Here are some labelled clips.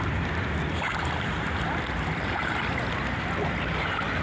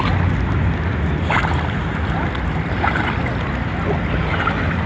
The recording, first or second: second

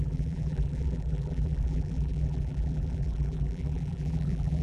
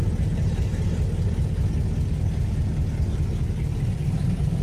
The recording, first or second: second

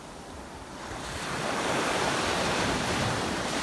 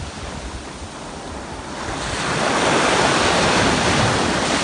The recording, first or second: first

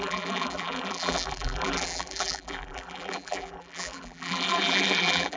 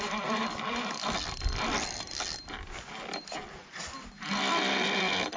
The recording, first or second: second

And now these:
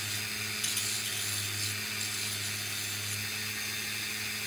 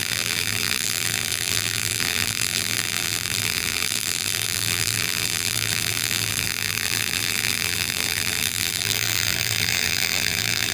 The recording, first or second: first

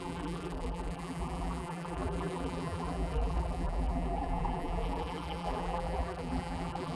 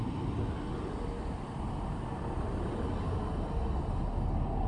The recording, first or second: second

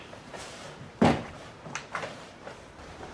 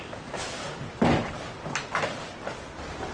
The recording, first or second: second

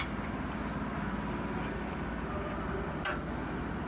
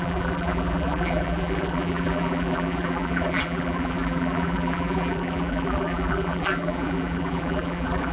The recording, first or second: first